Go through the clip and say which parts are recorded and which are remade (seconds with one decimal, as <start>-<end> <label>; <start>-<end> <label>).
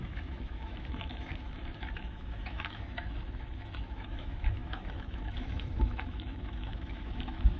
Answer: 0.0-7.6 remade